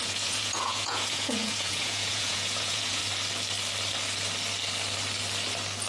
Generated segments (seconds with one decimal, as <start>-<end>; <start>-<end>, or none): 0.0-3.0